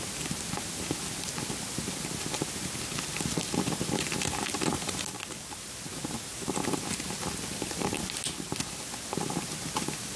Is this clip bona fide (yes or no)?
yes